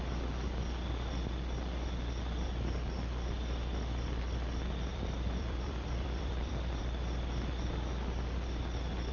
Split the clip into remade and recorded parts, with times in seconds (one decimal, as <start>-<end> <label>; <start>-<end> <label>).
0.0-4.9 recorded; 4.9-6.8 remade; 6.8-9.1 recorded

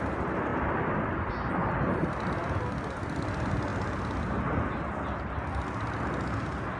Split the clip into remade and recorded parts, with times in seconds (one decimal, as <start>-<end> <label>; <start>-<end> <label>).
0.0-6.8 recorded

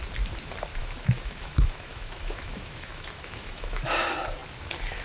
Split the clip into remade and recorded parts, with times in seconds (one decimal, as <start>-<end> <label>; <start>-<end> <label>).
0.0-0.8 recorded; 0.8-3.8 remade; 3.8-5.0 recorded

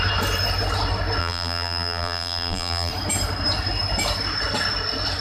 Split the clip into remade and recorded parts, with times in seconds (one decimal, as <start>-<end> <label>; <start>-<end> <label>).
0.0-1.2 recorded; 1.2-2.9 remade; 2.9-5.2 recorded

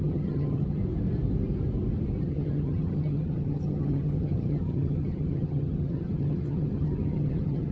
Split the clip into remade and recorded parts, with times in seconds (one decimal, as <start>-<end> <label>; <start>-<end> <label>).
0.0-0.8 remade; 0.8-2.2 recorded; 2.2-7.7 remade

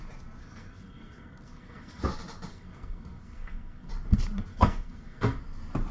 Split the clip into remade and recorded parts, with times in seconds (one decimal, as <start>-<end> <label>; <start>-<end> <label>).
0.0-0.4 recorded; 0.4-2.0 remade; 2.0-2.5 recorded; 2.5-3.9 remade; 3.9-4.5 recorded; 4.5-5.4 remade; 5.4-5.9 recorded